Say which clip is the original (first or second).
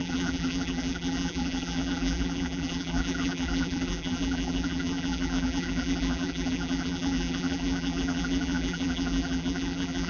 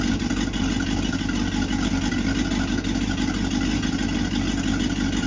second